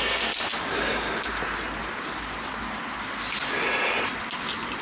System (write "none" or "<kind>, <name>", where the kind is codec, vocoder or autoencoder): none